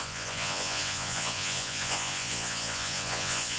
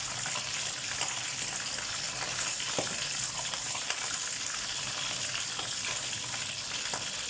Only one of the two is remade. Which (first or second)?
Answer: first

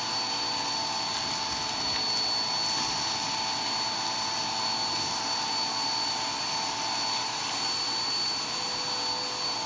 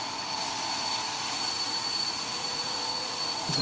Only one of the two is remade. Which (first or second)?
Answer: second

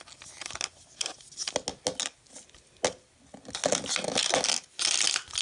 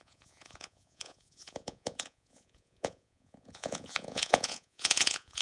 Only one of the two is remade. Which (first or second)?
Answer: second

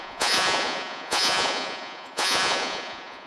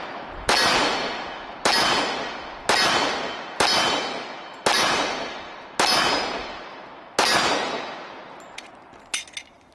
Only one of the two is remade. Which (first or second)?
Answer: first